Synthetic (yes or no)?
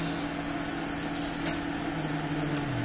no